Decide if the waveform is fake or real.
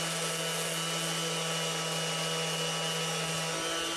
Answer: real